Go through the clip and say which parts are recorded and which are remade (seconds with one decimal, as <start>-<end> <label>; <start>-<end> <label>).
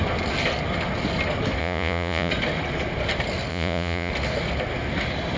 0.0-1.6 recorded; 1.6-2.3 remade; 2.3-3.5 recorded; 3.5-4.1 remade; 4.1-5.4 recorded